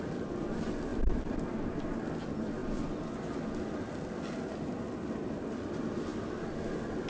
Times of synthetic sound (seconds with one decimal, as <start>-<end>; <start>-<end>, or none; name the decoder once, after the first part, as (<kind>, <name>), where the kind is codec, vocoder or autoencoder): 0.9-1.4 (vocoder, BigVGAN v2)